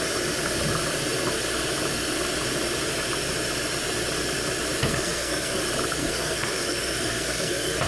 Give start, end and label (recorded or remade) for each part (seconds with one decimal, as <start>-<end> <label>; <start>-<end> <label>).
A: 0.0-4.8 recorded; 4.8-5.6 remade; 5.6-6.0 recorded; 6.0-7.9 remade